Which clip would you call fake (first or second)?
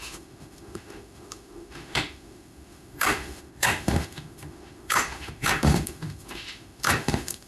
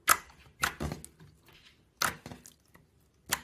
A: first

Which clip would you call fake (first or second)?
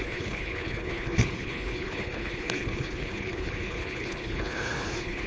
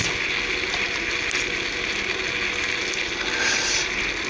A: first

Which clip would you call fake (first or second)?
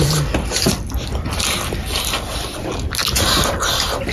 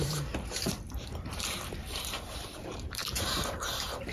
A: second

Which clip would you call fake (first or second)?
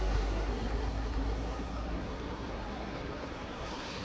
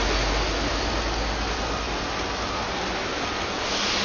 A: first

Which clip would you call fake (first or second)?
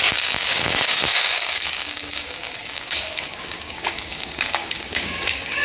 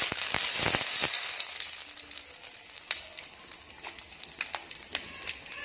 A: first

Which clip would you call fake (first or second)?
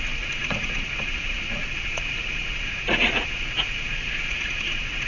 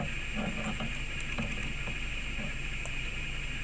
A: first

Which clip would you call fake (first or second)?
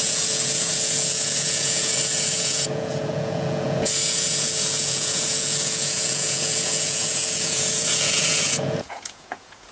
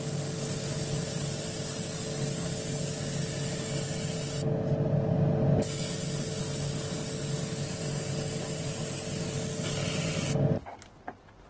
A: first